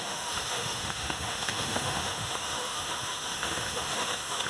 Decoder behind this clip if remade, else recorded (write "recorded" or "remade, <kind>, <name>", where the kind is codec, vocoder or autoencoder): remade, autoencoder, DAC-VAE